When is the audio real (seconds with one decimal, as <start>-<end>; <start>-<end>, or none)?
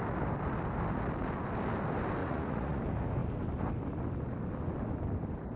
0.0-2.2; 2.8-5.6